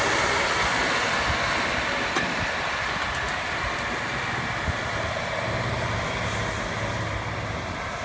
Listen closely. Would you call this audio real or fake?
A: real